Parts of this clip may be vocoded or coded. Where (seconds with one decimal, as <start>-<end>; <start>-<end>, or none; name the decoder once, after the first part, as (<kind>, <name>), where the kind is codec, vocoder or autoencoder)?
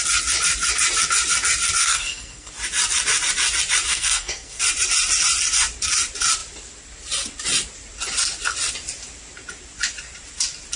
1.8-2.5 (codec, SNAC); 3.9-4.6